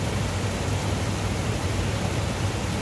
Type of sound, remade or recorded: recorded